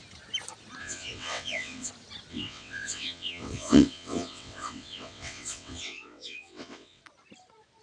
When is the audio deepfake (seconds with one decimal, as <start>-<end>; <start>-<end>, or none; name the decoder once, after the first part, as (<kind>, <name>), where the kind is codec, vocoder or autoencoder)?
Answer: 0.8-1.9 (vocoder, WaveNeXt); 2.3-7.0